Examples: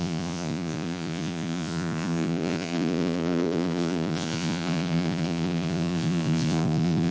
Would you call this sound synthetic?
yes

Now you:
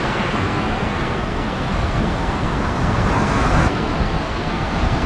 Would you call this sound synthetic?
yes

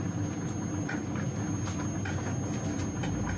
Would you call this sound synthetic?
no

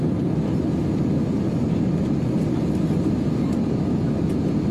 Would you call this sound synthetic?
no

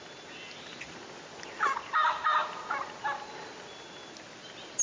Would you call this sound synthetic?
no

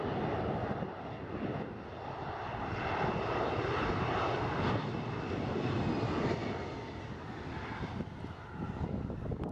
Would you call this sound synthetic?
no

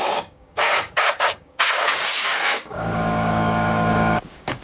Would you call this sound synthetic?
yes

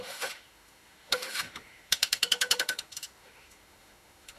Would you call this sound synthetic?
yes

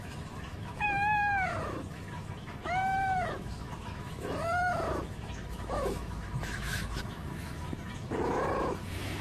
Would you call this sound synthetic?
yes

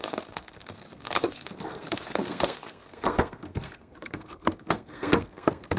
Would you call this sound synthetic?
yes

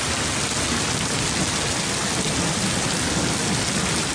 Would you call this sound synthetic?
no